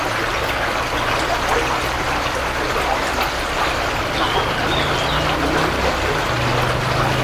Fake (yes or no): no